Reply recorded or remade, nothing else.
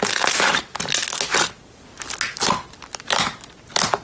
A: recorded